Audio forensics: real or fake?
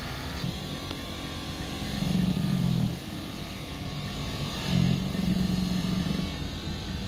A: real